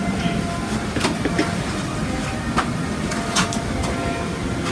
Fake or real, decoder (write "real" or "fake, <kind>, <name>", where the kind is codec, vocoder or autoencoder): real